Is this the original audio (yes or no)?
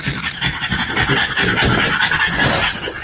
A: yes